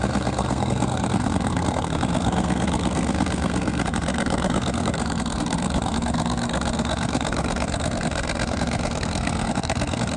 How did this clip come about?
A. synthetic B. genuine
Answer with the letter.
A